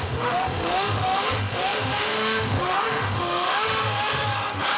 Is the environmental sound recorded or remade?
remade